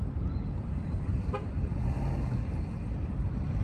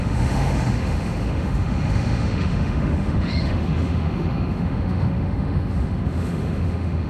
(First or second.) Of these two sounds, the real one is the first